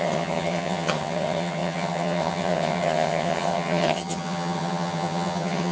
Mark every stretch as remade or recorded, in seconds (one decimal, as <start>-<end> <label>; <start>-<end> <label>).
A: 0.0-5.7 remade